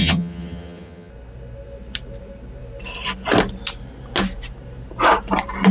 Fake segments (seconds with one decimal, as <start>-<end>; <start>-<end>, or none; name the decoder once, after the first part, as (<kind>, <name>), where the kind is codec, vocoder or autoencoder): 0.0-1.1 (vocoder, HiFi-GAN)